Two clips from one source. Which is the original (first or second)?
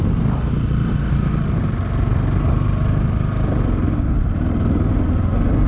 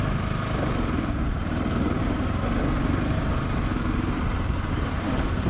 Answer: first